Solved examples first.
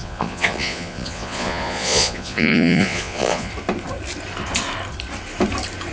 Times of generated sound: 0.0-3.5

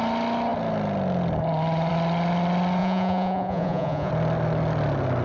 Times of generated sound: 2.8-4.1

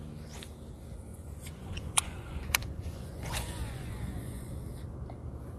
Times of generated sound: 1.1-4.5

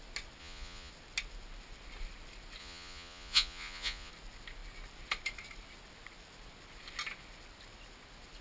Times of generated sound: 0.4-0.9; 2.6-4.1